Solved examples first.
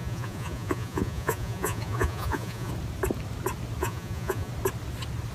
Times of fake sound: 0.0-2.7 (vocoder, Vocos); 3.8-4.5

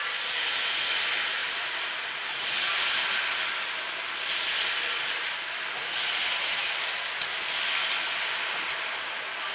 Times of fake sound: none

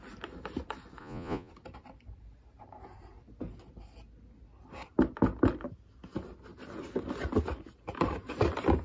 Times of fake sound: 1.0-1.5 (vocoder, Vocos)

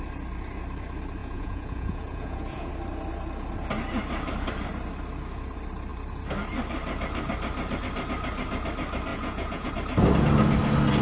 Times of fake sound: 1.2-2.7 (vocoder, Vocos); 9.1-9.7

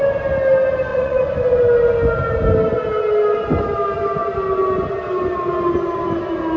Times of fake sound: 0.9-1.6 (vocoder, Vocos)

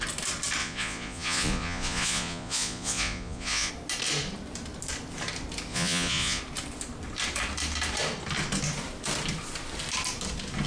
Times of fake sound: 0.6-3.7 (vocoder, Vocos); 5.7-6.4